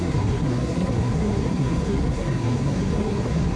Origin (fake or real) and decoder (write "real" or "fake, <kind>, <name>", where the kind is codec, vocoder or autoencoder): fake, codec, SNAC